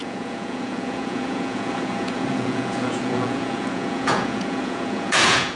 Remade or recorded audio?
remade